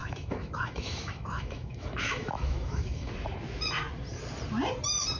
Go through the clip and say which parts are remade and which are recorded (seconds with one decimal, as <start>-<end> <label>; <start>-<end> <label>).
0.0-3.1 remade; 3.1-5.2 recorded